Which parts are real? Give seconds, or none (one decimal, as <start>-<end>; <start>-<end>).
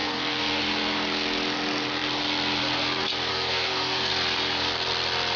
0.6-3.3; 4.1-5.4